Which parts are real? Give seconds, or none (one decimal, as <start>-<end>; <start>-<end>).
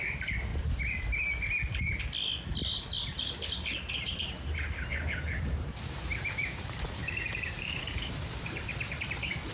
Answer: 0.5-3.9; 8.7-9.5